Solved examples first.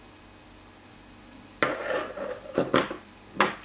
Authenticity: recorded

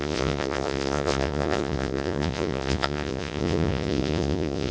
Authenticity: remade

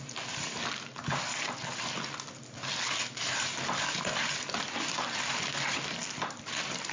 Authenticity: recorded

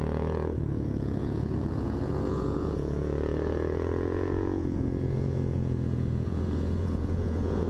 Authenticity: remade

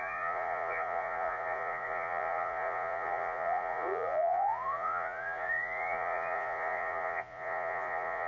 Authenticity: remade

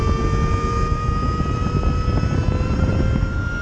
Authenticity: recorded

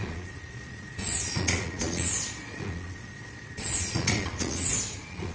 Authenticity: remade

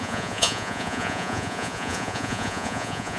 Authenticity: remade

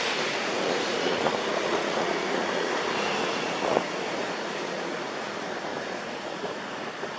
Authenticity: remade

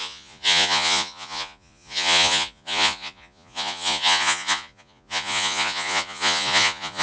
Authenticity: remade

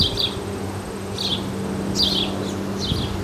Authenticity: recorded